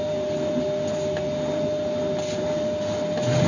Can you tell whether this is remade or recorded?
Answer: recorded